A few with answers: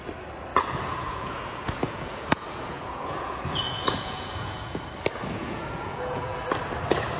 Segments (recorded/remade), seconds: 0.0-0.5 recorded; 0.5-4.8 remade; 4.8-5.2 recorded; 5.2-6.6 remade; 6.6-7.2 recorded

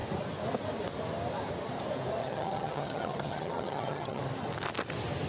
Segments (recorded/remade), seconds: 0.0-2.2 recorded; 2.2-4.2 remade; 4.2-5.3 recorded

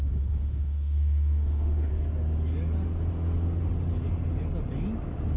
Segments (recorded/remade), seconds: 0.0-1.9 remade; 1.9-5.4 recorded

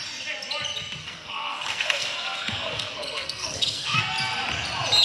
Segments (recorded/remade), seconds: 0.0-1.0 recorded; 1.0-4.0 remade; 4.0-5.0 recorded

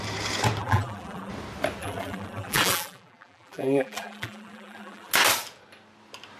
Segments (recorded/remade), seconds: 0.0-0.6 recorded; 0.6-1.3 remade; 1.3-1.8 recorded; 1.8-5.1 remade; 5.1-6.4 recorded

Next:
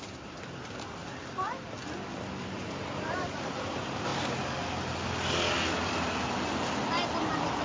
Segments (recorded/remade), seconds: 0.0-1.0 remade; 1.0-2.3 recorded; 2.3-4.1 remade; 4.1-7.6 recorded